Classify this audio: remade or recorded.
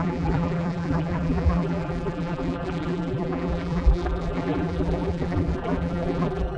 remade